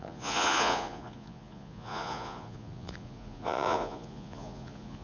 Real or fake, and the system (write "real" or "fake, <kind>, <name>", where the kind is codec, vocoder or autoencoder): fake, vocoder, Vocos